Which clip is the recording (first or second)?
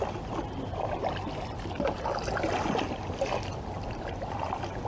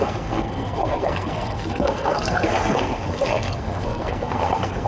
first